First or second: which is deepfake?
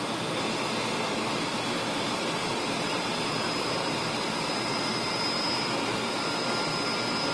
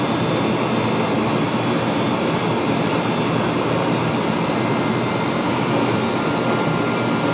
first